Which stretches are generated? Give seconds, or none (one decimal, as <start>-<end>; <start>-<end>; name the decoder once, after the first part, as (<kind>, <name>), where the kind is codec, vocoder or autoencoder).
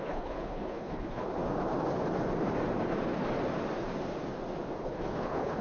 0.0-1.4 (codec, HILCodec); 4.8-5.6